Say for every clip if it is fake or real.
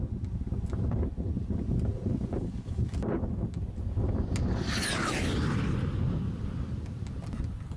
real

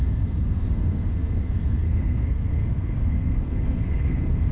fake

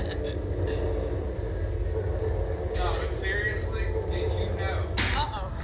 real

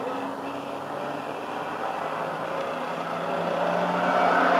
real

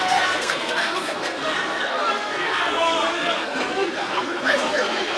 fake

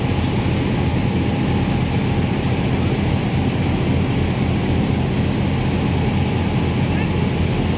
real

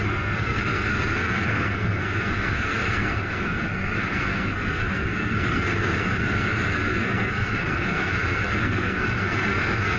fake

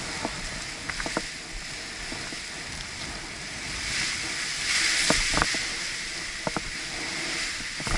real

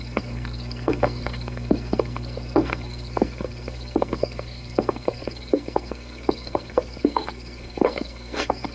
fake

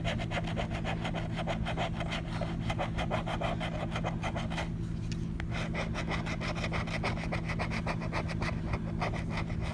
real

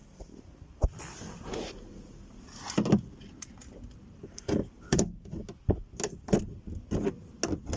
real